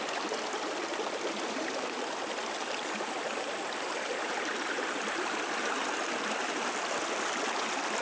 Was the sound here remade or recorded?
recorded